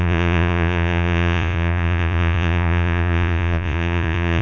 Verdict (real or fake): fake